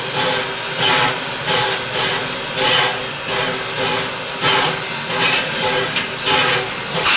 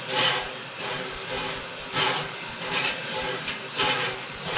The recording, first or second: first